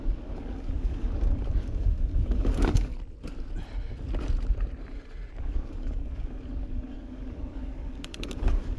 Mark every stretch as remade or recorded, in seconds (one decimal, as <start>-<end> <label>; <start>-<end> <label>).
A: 0.0-2.9 remade; 2.9-5.4 recorded; 5.4-8.8 remade